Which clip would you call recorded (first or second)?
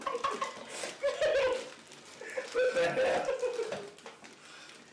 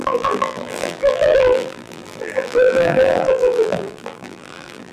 first